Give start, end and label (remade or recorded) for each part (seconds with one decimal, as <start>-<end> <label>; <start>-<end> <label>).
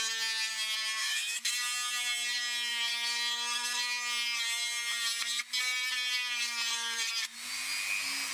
0.0-1.0 recorded; 1.0-1.5 remade; 1.5-8.3 recorded